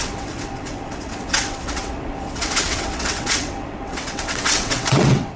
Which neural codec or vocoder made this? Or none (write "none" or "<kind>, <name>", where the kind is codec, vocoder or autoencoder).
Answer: vocoder, WaveNeXt